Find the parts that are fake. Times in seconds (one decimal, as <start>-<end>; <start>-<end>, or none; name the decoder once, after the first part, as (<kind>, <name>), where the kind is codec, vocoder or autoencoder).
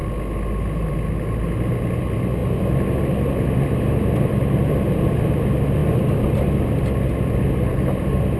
none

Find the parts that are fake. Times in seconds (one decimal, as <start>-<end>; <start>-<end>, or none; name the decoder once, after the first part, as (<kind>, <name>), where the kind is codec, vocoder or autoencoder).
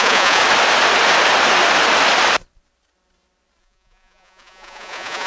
0.0-0.4 (vocoder, Vocos); 3.6-5.3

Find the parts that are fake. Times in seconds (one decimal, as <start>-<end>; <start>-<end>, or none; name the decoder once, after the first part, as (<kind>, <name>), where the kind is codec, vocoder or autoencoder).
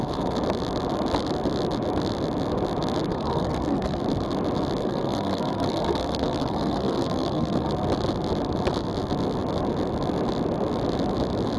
3.1-4.0 (codec, SNAC); 4.8-7.7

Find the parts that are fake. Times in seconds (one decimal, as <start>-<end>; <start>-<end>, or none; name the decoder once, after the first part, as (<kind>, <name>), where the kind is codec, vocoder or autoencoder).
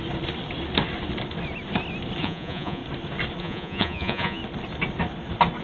2.2-2.8 (vocoder, Vocos); 3.4-4.4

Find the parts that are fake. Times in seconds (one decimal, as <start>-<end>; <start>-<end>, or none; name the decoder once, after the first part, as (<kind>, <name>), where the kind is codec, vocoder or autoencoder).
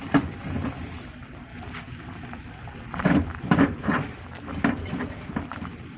none